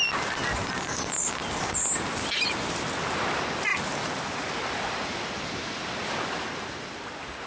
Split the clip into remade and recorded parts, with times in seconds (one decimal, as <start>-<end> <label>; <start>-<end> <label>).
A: 0.0-7.5 recorded